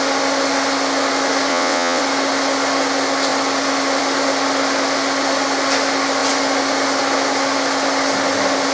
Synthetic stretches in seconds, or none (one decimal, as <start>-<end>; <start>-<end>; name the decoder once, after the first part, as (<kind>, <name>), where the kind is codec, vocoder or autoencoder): 1.5-2.0 (vocoder, WaveNeXt)